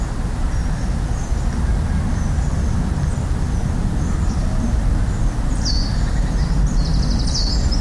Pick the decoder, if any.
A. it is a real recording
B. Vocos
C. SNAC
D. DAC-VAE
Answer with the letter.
A